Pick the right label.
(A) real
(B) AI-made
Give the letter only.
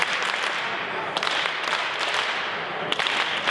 A